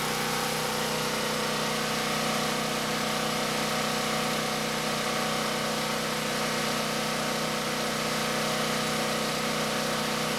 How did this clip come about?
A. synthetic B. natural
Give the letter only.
B